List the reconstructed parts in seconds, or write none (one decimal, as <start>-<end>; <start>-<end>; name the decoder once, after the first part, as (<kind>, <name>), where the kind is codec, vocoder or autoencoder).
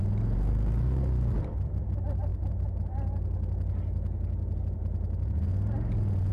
none